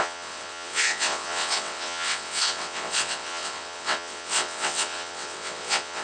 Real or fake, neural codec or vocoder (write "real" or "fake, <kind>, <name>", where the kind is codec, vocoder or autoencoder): fake, vocoder, WaveNeXt